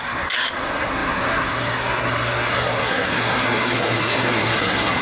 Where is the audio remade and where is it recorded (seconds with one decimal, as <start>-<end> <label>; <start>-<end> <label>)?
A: 0.0-5.0 remade